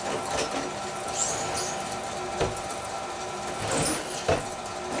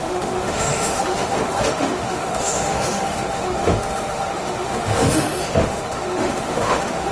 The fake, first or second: second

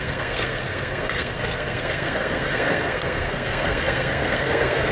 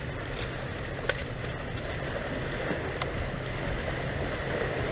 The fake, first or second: first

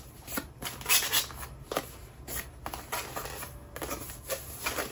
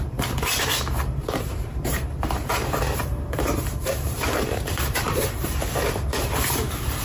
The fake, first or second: second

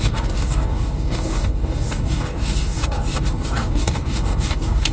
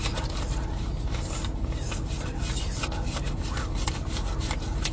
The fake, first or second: first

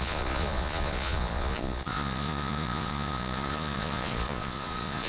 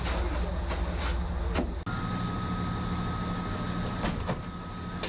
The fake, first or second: first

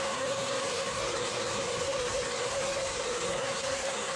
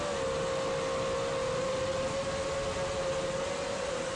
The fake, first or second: first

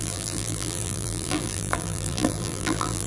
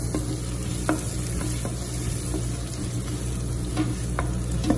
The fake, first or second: first